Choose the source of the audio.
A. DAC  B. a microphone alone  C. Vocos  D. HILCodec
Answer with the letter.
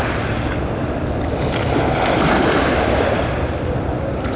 B